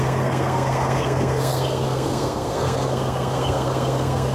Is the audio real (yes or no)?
no